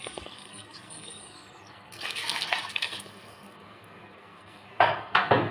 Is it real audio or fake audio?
fake